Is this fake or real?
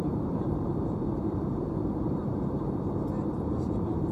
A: fake